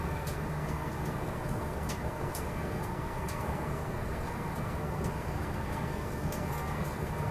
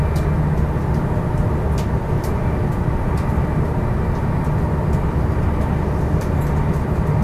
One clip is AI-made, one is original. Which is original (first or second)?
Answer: second